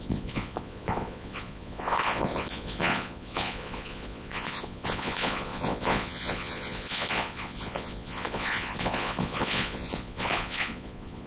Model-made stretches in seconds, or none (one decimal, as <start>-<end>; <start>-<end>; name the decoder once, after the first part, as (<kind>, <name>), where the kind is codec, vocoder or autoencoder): 0.0-11.3 (vocoder, Vocos)